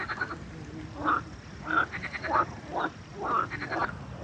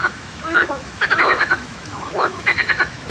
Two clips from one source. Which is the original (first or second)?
first